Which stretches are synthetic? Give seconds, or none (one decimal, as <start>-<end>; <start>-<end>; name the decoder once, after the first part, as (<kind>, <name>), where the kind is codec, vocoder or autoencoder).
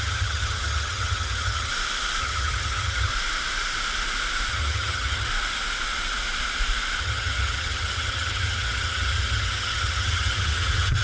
0.0-1.7 (vocoder, HiFi-GAN); 2.2-3.1; 4.5-5.3; 7.0-11.0